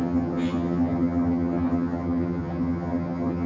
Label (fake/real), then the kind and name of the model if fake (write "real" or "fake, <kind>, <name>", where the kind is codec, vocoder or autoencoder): fake, vocoder, HiFi-GAN